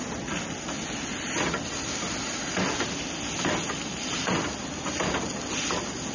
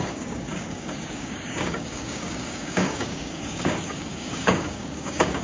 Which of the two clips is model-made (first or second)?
second